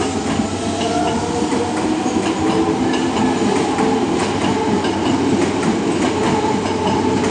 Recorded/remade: recorded